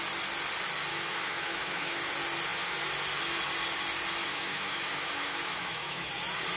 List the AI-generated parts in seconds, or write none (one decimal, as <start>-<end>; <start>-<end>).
0.9-2.1; 4.2-6.1